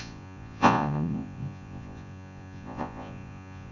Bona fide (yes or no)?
no